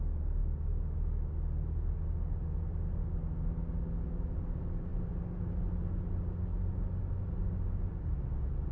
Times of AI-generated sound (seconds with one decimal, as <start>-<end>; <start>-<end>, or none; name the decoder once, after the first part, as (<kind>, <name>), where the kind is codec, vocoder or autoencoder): none